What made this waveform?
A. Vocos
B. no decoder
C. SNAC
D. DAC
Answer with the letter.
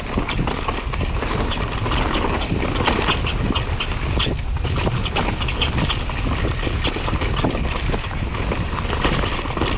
B